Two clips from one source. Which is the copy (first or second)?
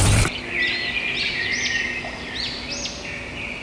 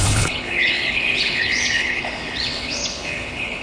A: second